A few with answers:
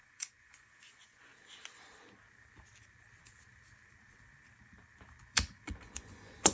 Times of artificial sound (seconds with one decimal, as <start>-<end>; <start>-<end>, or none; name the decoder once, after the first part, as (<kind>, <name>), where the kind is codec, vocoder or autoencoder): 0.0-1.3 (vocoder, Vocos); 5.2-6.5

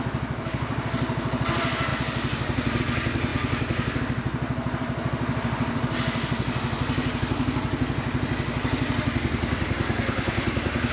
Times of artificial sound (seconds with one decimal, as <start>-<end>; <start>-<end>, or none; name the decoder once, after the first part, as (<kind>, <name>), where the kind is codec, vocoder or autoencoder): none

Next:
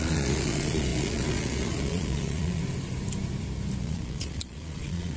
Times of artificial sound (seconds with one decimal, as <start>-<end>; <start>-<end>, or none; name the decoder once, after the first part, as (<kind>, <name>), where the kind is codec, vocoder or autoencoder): 0.0-2.6 (vocoder, Vocos); 3.8-5.2

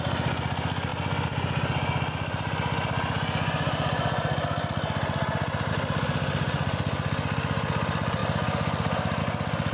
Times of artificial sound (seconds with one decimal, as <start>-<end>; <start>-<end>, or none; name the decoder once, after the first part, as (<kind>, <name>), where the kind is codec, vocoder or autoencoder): none

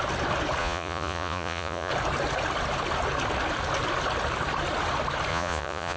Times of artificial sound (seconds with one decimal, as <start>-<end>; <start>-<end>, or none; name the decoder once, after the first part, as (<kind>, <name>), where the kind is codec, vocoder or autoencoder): 0.6-1.9 (vocoder, Vocos); 5.3-6.0

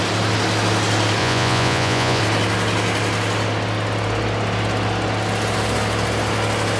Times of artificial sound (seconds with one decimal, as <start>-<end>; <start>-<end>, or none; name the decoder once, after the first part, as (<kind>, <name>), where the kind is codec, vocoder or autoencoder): 1.2-2.2 (vocoder, Vocos)

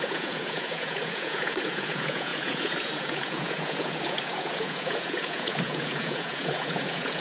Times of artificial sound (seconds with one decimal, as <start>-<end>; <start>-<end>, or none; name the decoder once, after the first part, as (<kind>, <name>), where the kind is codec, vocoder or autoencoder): 0.0-7.2 (vocoder, Vocos)

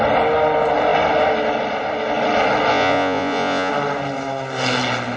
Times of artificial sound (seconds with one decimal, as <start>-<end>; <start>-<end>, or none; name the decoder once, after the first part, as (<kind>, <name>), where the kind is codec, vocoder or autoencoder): 2.7-3.7 (vocoder, Vocos)